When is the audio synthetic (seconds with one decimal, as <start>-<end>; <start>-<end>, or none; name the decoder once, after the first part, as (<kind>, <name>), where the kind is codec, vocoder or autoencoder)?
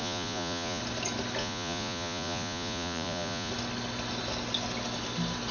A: 0.0-0.8 (vocoder, Vocos); 1.4-3.5